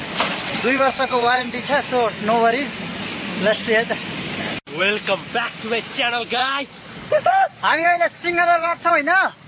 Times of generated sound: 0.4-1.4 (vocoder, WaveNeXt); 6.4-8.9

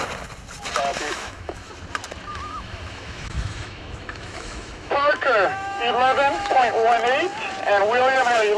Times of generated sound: 0.9-1.7 (autoencoder, DAC-VAE); 2.3-6.7

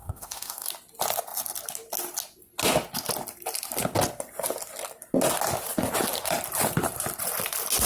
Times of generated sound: 0.0-0.7 (autoencoder, DAC-VAE)

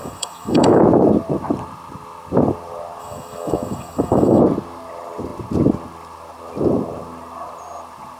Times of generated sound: 0.0-0.8 (autoencoder, DAC-VAE); 3.0-4.4